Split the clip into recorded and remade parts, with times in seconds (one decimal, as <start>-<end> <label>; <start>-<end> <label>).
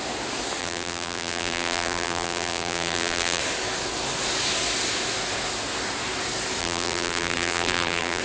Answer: 0.0-0.6 recorded; 0.6-3.4 remade; 3.4-6.6 recorded; 6.6-8.2 remade